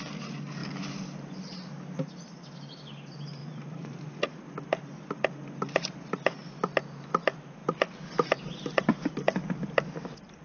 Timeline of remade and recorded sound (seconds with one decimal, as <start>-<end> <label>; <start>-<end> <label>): 0.0-3.4 recorded; 3.4-4.4 remade; 4.4-10.4 recorded